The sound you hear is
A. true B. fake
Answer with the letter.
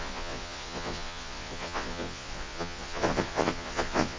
B